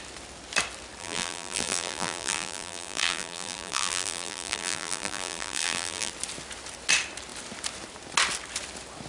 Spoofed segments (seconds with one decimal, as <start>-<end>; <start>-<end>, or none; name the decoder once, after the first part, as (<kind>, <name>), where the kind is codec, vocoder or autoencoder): 1.0-6.1 (vocoder, BigVGAN v2)